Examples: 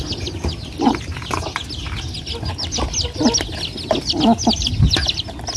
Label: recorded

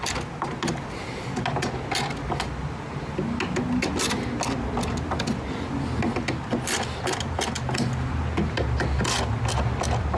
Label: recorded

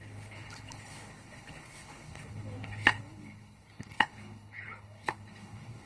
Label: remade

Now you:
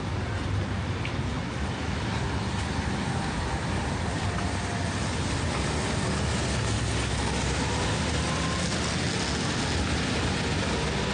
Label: recorded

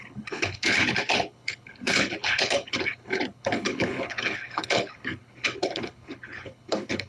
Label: remade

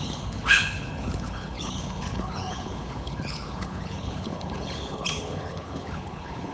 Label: remade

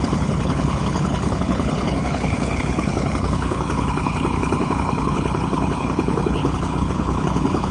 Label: remade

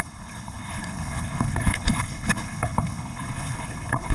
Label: remade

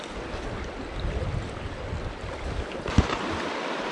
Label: recorded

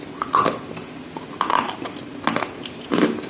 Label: recorded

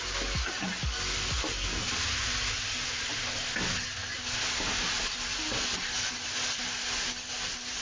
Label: recorded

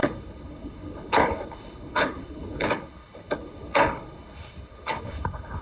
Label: remade